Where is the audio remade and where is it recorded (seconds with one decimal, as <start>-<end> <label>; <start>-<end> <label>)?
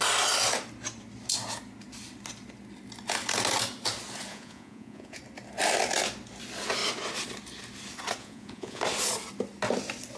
0.0-4.3 recorded; 4.3-5.2 remade; 5.2-8.2 recorded; 8.2-8.8 remade; 8.8-10.2 recorded